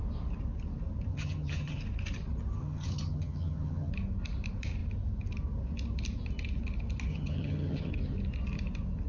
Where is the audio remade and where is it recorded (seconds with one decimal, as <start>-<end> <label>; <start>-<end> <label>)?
0.0-1.1 recorded; 1.1-1.8 remade; 1.8-2.6 recorded; 2.6-3.9 remade; 3.9-7.1 recorded; 7.1-7.9 remade; 7.9-9.1 recorded